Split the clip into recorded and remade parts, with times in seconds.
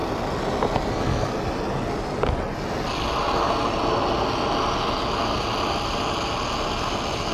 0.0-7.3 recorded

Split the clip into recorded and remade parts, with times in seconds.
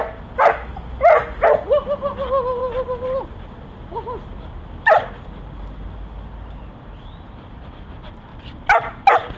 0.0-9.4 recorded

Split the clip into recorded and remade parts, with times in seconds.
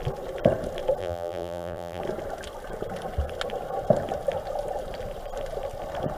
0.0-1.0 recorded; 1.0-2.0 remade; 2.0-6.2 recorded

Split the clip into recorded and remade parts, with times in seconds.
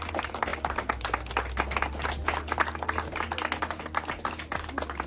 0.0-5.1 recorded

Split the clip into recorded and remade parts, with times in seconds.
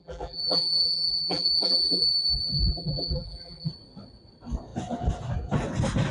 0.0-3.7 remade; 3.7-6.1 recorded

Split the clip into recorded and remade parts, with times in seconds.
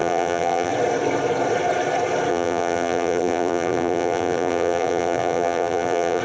0.0-0.7 remade; 0.7-2.3 recorded; 2.3-6.2 remade